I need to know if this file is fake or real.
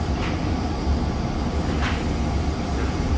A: real